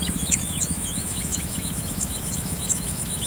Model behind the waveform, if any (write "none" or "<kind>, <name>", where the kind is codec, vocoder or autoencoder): autoencoder, DAC-VAE